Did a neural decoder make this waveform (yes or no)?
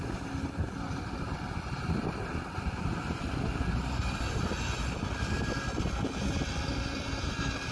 no